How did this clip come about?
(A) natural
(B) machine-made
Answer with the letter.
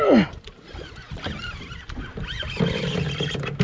A